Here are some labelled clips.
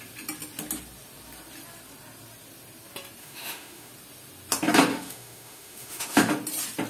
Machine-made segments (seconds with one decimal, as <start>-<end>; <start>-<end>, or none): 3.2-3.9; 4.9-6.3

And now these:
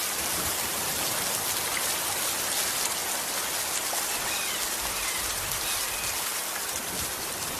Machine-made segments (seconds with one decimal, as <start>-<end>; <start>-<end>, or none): none

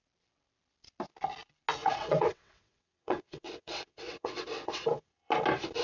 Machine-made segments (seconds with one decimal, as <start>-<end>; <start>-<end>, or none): 1.8-5.3

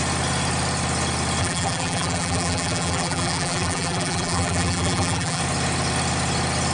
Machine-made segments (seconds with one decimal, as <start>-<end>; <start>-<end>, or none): 1.4-5.4